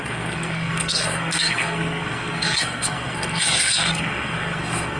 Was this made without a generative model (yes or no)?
no